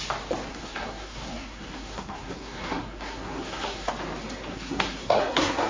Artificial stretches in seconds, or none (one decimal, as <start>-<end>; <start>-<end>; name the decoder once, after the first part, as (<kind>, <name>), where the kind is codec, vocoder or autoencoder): 0.5-3.9 (codec, SNAC); 4.5-5.7